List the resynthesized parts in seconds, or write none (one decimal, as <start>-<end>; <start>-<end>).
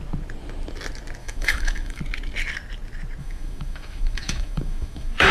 1.2-2.0; 3.2-5.3